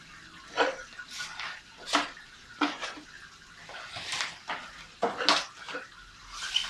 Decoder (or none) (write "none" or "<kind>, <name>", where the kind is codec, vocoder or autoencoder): none